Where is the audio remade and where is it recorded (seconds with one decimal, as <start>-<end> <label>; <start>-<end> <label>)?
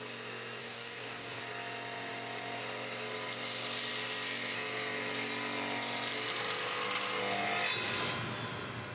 0.0-0.6 recorded; 0.6-1.4 remade; 1.4-8.9 recorded